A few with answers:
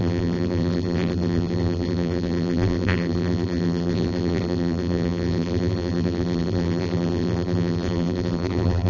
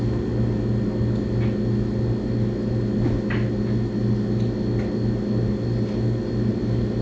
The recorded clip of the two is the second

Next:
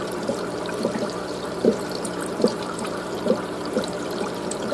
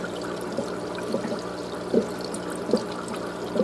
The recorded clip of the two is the second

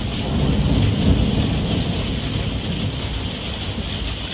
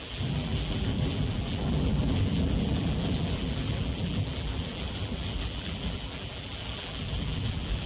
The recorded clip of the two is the first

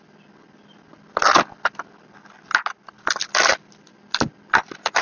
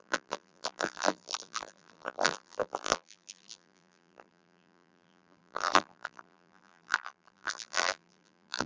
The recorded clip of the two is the first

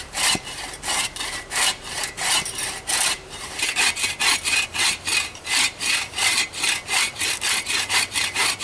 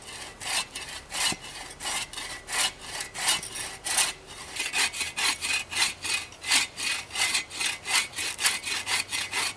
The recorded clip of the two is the second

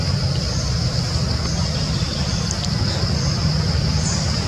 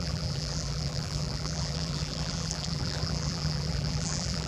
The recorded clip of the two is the first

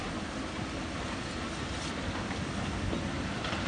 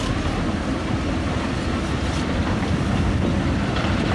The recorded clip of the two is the first